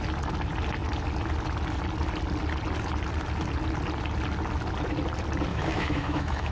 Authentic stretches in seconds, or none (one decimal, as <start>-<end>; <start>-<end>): 0.0-5.5